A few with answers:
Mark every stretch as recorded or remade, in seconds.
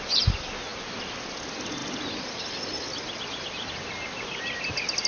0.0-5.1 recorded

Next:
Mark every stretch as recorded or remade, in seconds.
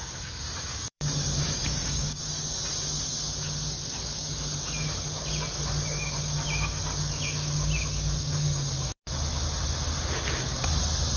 0.0-0.7 recorded; 0.7-2.2 remade; 2.2-11.2 recorded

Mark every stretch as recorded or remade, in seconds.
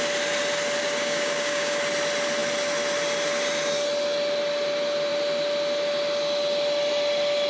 0.0-0.8 recorded; 0.8-1.8 remade; 1.8-7.5 recorded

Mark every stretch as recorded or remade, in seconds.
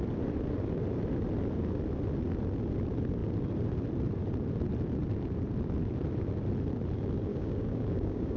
0.0-7.3 recorded; 7.3-8.4 remade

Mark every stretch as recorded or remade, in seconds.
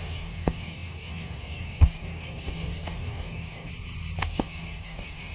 0.0-3.7 remade; 3.7-4.2 recorded; 4.2-5.3 remade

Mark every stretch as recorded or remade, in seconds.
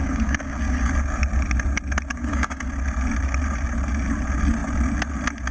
0.0-0.9 remade; 0.9-2.1 recorded; 2.1-2.7 remade; 2.7-5.5 recorded